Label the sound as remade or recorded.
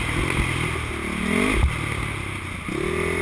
recorded